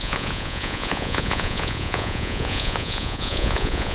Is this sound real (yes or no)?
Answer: no